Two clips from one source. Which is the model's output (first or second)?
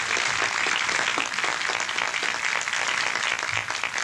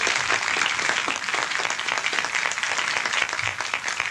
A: second